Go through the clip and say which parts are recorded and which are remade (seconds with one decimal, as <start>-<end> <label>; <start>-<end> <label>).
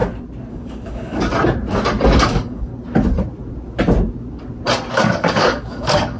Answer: 0.0-0.5 recorded; 0.5-1.3 remade; 1.3-2.3 recorded; 2.3-2.7 remade; 2.7-4.9 recorded; 4.9-6.2 remade